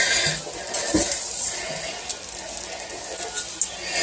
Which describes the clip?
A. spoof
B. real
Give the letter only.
B